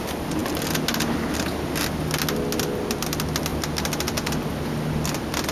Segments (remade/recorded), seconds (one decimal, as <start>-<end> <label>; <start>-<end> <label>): 0.0-5.5 recorded